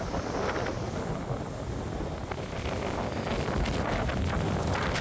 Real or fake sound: real